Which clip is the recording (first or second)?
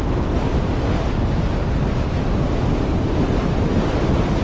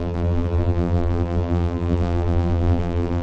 first